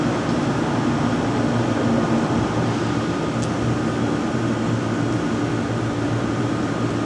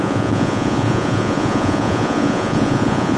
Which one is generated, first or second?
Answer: second